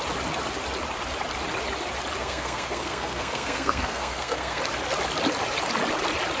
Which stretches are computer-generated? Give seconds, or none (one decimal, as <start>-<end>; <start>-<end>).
2.2-4.6